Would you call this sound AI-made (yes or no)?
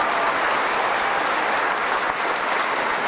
no